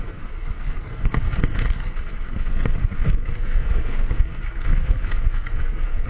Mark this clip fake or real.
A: fake